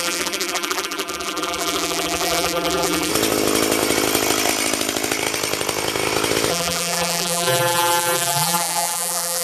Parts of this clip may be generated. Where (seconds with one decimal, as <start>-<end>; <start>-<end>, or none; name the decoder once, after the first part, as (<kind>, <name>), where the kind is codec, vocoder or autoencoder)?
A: 0.0-3.1 (vocoder, BigVGAN v2); 6.5-9.4